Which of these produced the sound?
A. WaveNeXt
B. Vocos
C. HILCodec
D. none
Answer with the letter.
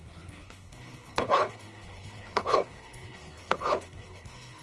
C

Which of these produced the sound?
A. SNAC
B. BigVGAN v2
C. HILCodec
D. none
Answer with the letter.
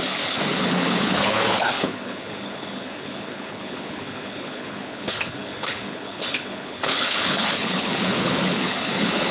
C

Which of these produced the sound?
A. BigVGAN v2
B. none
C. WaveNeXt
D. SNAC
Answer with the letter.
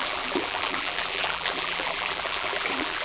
A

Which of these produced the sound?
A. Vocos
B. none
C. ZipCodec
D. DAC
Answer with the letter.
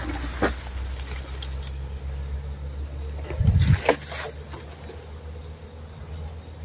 B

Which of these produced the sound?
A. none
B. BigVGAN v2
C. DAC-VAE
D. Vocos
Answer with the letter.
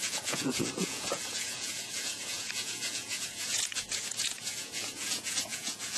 D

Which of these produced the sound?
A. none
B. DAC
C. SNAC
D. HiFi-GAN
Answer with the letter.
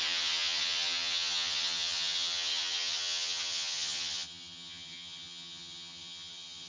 D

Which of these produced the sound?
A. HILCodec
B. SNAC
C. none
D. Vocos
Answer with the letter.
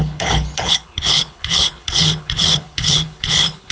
A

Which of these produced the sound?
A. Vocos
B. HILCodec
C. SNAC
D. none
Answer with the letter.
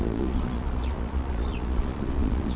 A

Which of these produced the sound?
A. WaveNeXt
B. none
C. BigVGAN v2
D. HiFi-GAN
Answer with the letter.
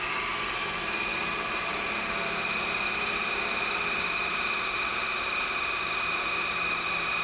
B